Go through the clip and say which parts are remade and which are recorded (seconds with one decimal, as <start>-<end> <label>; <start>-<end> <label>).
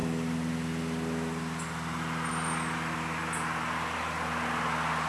0.0-5.1 recorded